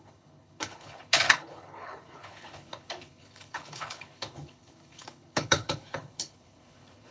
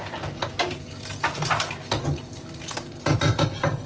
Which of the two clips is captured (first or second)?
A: second